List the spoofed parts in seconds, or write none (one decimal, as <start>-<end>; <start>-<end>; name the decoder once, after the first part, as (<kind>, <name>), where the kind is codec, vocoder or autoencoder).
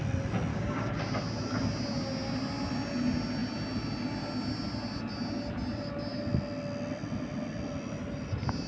0.5-1.0 (codec, DAC)